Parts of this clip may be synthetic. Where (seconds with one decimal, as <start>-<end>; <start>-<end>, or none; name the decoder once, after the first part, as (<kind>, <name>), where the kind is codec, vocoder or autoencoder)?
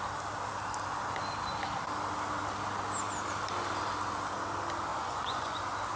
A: 4.9-5.6 (vocoder, Vocos)